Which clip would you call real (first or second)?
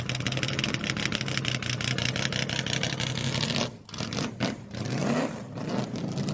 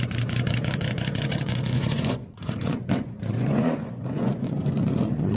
first